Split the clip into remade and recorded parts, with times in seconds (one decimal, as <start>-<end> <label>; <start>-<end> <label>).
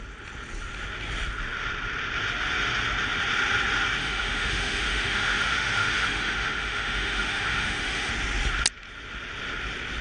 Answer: 0.0-4.0 recorded; 4.0-8.1 remade; 8.1-10.0 recorded